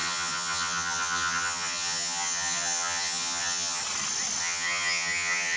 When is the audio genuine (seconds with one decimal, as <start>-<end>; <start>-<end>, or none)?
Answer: 3.8-4.4